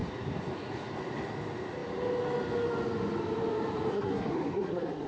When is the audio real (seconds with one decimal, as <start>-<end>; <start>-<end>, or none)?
0.0-3.9